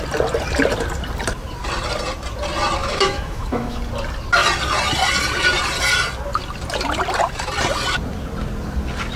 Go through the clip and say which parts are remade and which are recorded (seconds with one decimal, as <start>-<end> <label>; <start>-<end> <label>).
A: 0.0-2.8 recorded; 2.8-3.8 remade; 3.8-9.2 recorded